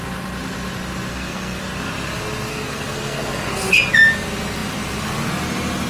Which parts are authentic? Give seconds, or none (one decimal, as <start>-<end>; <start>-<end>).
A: 0.0-1.1; 1.6-2.5; 3.7-5.9